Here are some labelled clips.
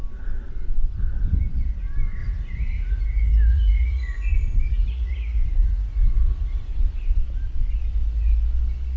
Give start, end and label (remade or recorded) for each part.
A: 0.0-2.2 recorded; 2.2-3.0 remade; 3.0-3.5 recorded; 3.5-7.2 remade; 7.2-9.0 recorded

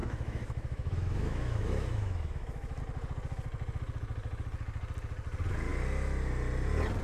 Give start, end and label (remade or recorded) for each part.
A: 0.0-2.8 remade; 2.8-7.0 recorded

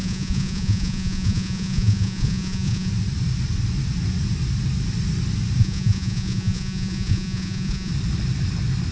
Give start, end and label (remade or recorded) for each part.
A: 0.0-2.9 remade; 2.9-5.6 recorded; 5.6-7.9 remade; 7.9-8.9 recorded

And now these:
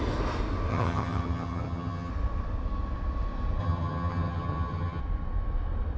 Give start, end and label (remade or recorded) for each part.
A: 0.0-0.7 recorded; 0.7-2.1 remade; 2.1-3.6 recorded; 3.6-5.0 remade; 5.0-6.0 recorded